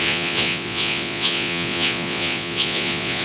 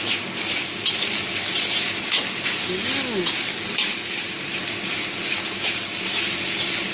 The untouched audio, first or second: second